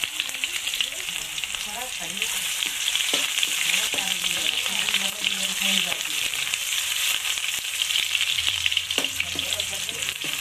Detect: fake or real fake